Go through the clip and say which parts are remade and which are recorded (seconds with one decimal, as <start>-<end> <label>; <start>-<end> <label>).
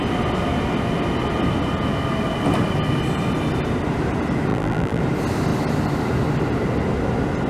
0.0-4.5 recorded; 4.5-5.0 remade; 5.0-7.5 recorded